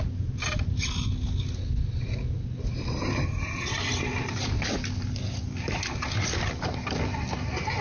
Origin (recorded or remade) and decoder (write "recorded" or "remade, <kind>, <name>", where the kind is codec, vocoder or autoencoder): recorded